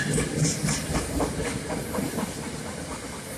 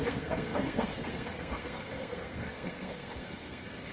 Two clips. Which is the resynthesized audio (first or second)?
second